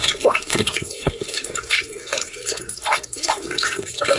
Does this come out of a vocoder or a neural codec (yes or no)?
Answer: yes